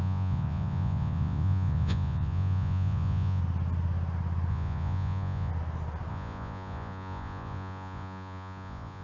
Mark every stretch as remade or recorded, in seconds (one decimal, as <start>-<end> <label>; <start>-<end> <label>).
0.0-3.4 remade; 3.4-4.5 recorded; 4.5-5.5 remade; 5.5-6.1 recorded; 6.1-9.0 remade